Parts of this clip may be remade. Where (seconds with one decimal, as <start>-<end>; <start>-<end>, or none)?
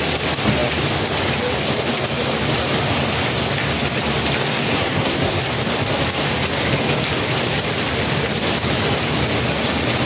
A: 4.5-5.4